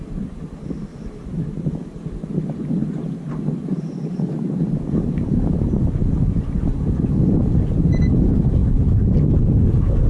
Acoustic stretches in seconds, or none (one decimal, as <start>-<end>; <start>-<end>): 0.0-0.9; 1.7-8.6